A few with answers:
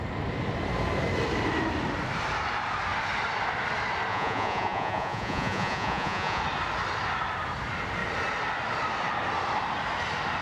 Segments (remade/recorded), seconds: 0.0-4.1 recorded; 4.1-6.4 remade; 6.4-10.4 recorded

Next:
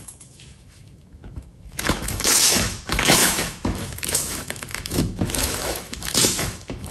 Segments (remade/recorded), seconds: 0.0-6.9 remade